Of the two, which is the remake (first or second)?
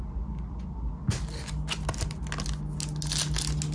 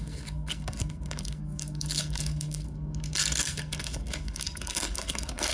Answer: second